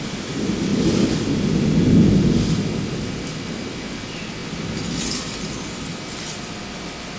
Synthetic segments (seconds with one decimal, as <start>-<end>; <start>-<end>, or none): none